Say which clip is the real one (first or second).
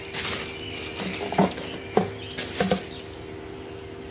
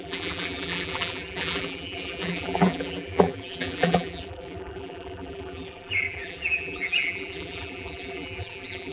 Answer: first